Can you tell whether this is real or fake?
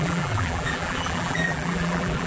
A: fake